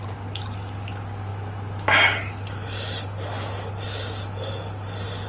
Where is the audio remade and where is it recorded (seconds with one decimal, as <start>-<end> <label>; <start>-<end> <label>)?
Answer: 0.0-5.3 recorded